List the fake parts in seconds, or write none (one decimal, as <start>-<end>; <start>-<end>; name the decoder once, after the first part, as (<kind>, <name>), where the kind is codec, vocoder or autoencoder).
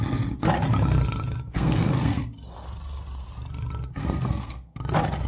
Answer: 1.5-2.2 (codec, SNAC); 4.0-4.8